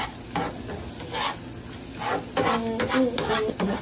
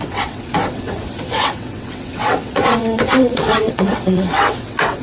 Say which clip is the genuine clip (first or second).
first